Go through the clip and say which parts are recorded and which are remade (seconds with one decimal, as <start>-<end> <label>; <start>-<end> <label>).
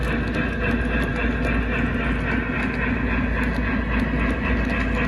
0.0-5.1 recorded